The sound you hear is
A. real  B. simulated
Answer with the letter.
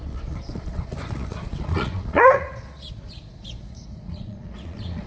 B